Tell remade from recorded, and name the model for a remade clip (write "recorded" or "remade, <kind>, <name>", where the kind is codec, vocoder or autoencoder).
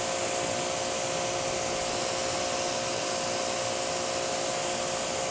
recorded